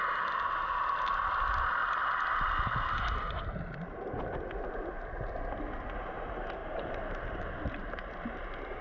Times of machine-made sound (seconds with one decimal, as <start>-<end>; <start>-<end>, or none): 6.6-8.8